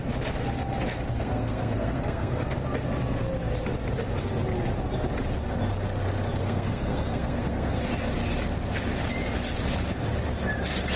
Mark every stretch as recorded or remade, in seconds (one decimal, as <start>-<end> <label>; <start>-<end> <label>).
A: 0.0-1.1 recorded; 1.1-2.4 remade; 2.4-6.4 recorded; 6.4-7.8 remade; 7.8-11.0 recorded